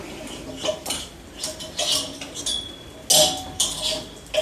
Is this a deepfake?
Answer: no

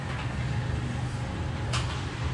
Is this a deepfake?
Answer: no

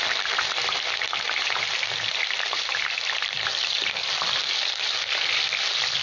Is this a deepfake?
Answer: yes